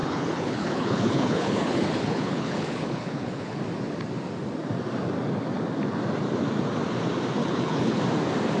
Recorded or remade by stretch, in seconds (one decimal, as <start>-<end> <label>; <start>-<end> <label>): 0.0-3.6 remade; 3.6-7.4 recorded; 7.4-8.0 remade; 8.0-8.6 recorded